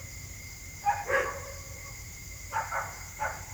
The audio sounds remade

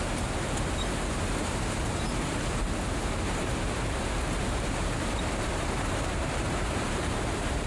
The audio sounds remade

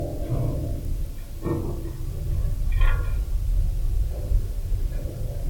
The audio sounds recorded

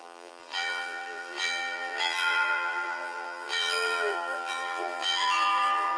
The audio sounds remade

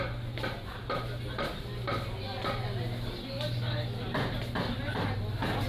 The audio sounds recorded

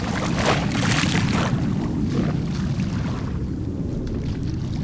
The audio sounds recorded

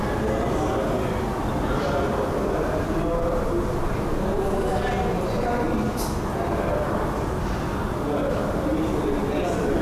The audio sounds recorded